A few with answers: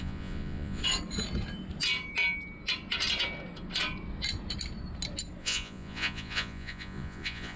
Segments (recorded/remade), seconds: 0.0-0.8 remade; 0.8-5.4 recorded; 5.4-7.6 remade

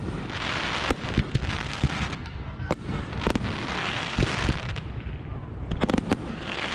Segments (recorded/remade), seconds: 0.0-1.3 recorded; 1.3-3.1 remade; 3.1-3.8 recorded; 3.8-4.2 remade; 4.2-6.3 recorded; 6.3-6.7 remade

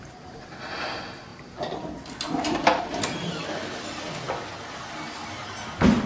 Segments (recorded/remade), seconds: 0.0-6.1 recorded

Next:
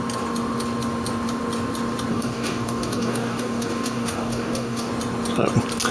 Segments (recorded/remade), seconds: 0.0-2.1 recorded; 2.1-4.9 remade; 4.9-5.9 recorded

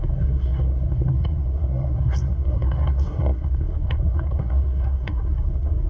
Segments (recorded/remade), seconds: 0.0-5.9 remade

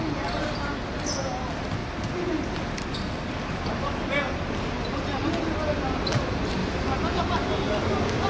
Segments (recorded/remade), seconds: 0.0-8.3 recorded

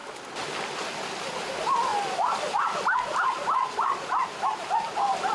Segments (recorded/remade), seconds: 0.0-5.3 recorded